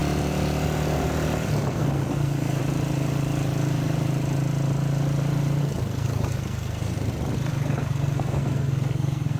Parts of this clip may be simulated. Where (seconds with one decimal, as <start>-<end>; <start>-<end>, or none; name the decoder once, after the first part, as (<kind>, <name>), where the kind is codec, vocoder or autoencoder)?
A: 1.7-2.6 (codec, SNAC); 5.6-6.9; 7.5-9.4